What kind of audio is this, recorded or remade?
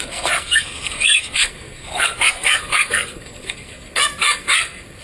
remade